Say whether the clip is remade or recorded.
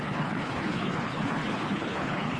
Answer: remade